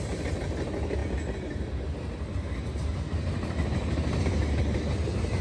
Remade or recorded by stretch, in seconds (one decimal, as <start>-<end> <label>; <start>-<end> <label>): 0.0-5.4 recorded